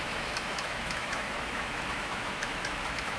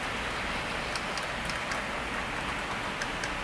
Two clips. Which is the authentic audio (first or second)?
second